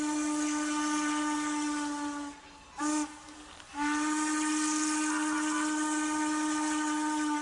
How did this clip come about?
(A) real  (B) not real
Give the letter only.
A